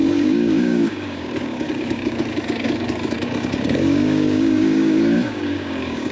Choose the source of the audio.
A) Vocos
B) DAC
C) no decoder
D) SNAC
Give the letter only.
B